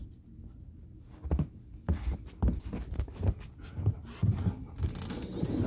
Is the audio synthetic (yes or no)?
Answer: no